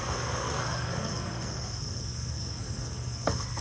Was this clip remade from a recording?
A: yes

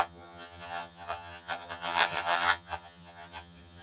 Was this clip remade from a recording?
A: yes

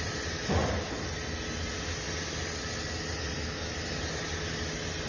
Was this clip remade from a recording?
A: no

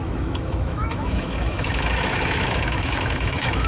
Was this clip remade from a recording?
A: yes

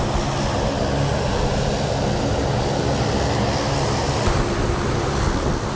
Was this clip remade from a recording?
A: no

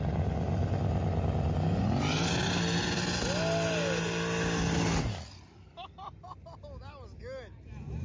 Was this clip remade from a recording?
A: no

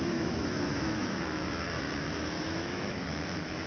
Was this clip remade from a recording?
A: yes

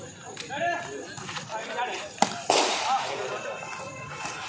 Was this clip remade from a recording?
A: no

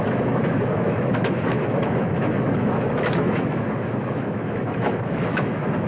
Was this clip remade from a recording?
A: yes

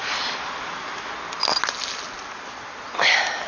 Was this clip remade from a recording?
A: no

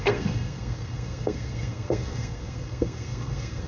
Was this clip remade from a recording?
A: yes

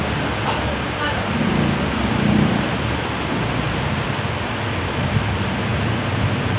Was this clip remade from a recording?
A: no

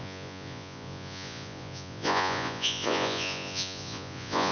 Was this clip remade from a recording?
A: yes